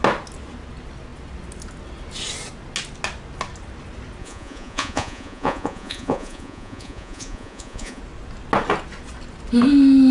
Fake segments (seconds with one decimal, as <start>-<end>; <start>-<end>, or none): 4.2-8.0